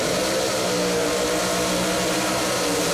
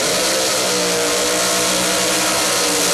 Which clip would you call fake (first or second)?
first